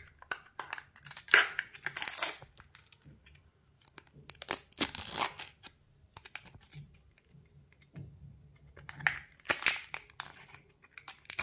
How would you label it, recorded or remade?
recorded